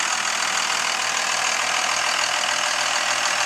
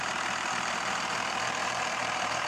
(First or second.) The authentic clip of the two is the first